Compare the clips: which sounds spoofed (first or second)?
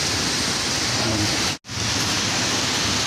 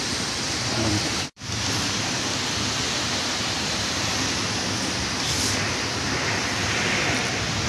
second